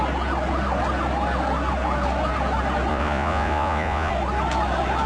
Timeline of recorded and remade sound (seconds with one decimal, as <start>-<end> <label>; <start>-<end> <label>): 0.0-2.9 recorded; 2.9-4.1 remade; 4.1-5.1 recorded

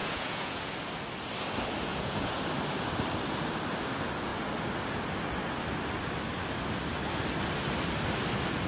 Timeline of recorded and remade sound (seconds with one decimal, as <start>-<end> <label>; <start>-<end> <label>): 0.0-0.7 remade; 0.7-1.9 recorded; 1.9-2.4 remade; 2.4-8.7 recorded

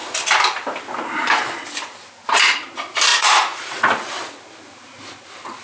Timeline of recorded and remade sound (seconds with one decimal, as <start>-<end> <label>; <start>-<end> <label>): 0.0-3.1 recorded; 3.1-3.9 remade; 3.9-5.6 recorded

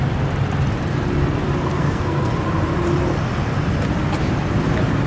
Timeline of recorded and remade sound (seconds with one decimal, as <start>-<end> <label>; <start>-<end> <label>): 0.0-1.7 recorded; 1.7-2.3 remade; 2.3-5.1 recorded

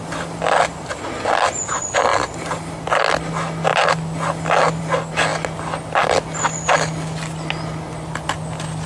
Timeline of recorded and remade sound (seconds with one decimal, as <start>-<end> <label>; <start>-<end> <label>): 0.0-8.9 recorded

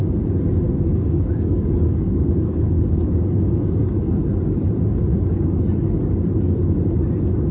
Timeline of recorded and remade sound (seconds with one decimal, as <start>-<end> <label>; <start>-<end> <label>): 0.0-0.9 recorded; 0.9-3.5 remade; 3.5-5.1 recorded; 5.1-5.6 remade; 5.6-7.5 recorded

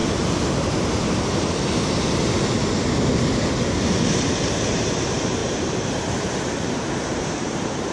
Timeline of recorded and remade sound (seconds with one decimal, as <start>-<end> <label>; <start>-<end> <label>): 0.0-4.7 recorded; 4.7-7.9 remade

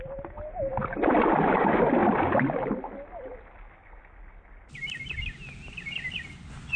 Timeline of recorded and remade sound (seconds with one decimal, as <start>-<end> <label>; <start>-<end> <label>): 0.0-6.8 recorded